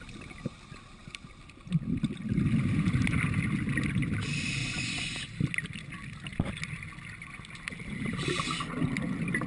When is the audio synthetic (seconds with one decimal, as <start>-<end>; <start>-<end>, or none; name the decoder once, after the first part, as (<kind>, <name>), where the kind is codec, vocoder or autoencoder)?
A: 4.6-5.2 (vocoder, Vocos)